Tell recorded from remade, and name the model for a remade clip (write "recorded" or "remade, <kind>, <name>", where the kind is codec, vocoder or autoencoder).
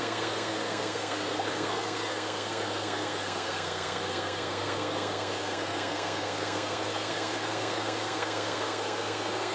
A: remade, codec, SNAC